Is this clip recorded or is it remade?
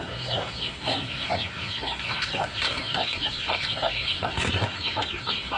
remade